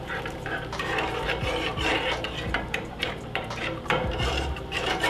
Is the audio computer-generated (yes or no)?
yes